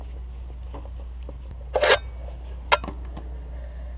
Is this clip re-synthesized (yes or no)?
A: no